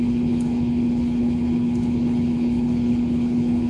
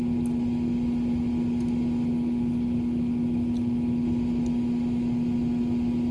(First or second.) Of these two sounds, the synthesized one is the first